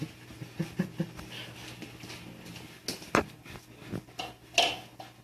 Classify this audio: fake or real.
real